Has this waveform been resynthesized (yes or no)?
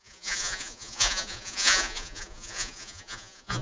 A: yes